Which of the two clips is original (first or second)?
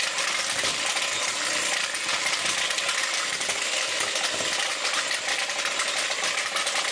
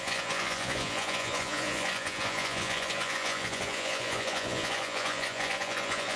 first